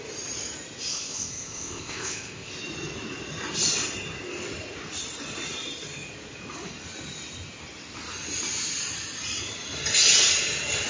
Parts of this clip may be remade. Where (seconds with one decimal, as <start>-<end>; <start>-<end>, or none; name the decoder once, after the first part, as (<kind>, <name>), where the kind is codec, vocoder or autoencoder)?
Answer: 0.9-2.5 (codec, ZipCodec)